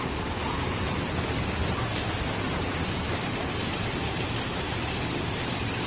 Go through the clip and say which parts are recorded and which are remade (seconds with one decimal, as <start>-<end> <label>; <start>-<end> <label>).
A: 0.0-5.9 remade